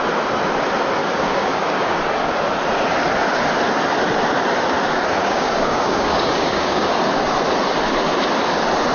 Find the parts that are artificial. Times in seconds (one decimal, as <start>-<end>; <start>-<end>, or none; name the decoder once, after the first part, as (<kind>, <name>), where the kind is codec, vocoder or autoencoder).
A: 1.0-2.0 (codec, DAC); 5.2-7.0